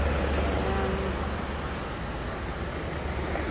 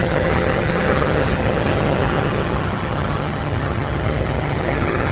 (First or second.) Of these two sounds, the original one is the first